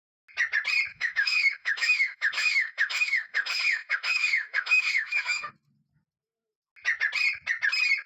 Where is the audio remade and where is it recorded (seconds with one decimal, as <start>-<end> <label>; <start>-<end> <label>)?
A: 0.0-0.9 recorded; 0.9-5.5 remade; 5.5-8.1 recorded

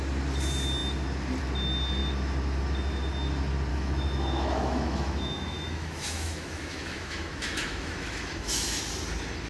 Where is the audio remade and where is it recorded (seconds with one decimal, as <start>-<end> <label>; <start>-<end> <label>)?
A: 0.0-3.7 recorded; 3.7-8.8 remade; 8.8-9.5 recorded

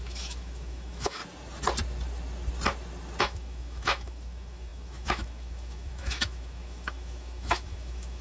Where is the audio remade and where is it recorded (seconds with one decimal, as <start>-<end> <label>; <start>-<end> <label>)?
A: 0.0-1.2 remade; 1.2-3.2 recorded; 3.2-8.2 remade

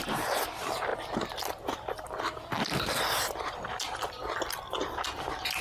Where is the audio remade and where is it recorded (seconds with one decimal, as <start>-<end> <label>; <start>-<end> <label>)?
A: 0.0-5.6 recorded